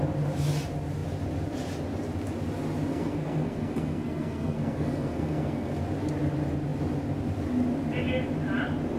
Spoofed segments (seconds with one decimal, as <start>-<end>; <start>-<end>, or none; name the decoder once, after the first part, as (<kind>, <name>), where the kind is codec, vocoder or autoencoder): 2.9-5.8 (codec, SNAC)